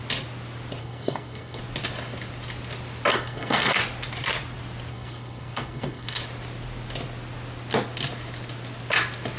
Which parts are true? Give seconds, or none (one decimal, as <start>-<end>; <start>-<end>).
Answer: 0.0-0.8; 1.6-3.1; 3.8-4.9; 6.2-9.4